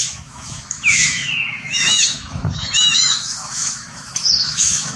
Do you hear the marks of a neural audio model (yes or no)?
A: yes